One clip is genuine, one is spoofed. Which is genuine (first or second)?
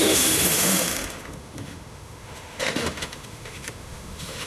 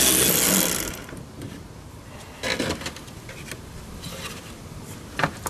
second